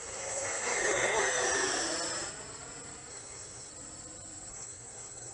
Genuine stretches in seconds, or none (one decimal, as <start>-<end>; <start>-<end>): 1.2-3.1; 3.7-4.5